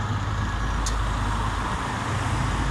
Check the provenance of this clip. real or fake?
real